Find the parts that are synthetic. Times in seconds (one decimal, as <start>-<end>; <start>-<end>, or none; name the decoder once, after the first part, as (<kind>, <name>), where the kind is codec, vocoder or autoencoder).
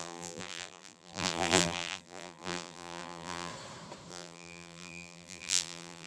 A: 0.0-3.5 (vocoder, BigVGAN v2); 4.1-6.1